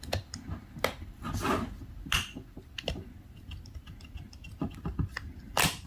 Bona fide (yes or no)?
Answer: yes